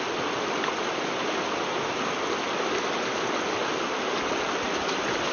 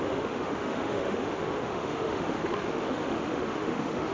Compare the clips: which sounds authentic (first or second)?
first